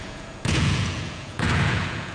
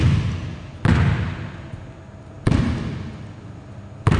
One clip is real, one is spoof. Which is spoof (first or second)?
first